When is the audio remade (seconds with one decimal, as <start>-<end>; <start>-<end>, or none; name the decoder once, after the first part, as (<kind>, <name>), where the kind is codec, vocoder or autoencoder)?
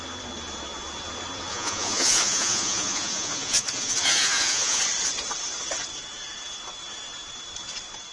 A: 1.5-4.8 (vocoder, Vocos)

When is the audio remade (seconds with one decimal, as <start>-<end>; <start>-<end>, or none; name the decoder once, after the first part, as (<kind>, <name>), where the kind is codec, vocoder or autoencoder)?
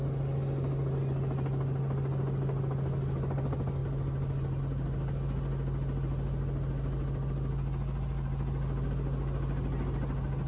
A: none